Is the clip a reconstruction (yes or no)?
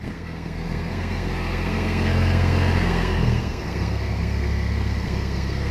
yes